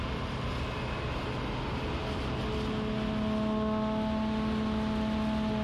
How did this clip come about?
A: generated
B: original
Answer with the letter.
B